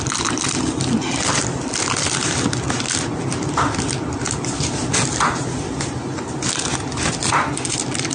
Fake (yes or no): no